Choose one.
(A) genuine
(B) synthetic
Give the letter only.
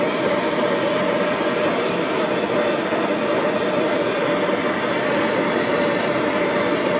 A